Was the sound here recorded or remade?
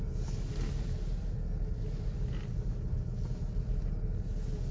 recorded